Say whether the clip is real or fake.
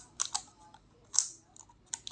real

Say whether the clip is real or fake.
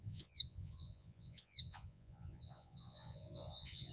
fake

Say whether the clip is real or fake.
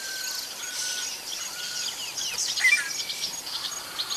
real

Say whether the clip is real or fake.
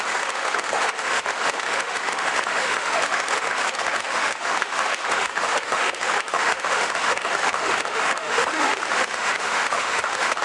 fake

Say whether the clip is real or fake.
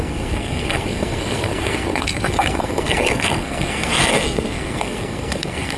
fake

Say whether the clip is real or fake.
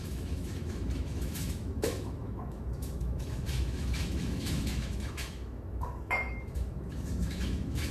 fake